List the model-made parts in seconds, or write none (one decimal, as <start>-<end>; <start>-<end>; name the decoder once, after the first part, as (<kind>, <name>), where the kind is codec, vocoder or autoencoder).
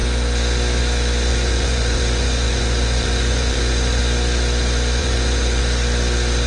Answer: 1.3-4.0 (vocoder, Vocos); 5.0-5.6